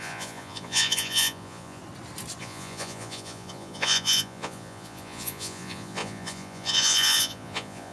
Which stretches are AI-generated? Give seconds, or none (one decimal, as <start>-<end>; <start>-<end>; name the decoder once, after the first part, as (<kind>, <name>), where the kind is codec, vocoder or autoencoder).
0.0-1.8 (vocoder, Vocos); 2.4-7.9